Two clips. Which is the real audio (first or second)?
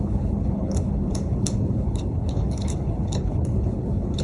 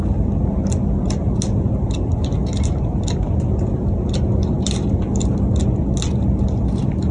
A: second